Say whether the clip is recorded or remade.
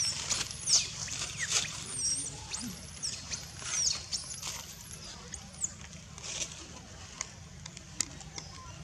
recorded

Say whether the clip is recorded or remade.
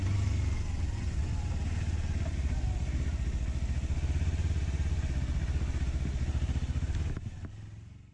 recorded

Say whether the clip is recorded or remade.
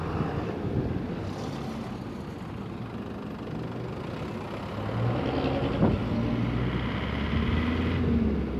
recorded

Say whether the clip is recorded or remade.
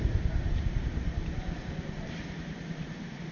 remade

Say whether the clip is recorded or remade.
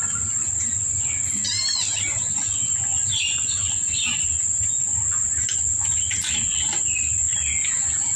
recorded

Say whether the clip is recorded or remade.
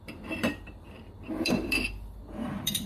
remade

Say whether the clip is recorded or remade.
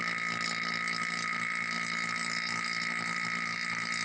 recorded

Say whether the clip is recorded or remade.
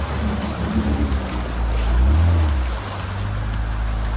recorded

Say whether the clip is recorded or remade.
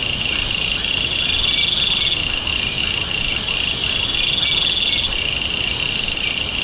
recorded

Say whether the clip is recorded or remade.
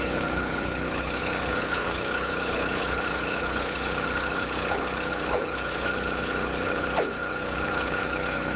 remade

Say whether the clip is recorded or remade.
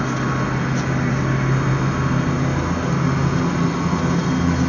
recorded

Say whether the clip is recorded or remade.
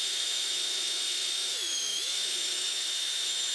remade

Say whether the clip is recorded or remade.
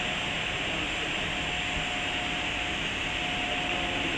recorded